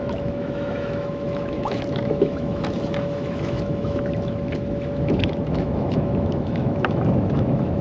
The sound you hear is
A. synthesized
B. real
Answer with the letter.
A